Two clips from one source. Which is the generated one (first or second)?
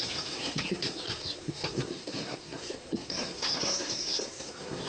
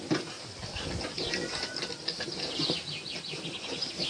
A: first